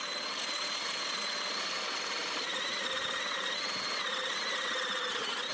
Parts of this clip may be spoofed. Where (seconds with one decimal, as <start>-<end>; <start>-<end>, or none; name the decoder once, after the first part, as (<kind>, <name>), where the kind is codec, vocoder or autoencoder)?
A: none